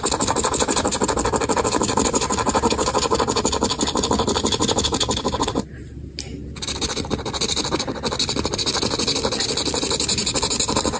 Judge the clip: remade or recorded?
recorded